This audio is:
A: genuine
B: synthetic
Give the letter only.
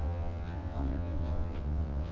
B